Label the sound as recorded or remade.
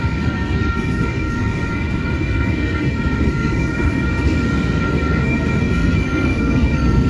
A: remade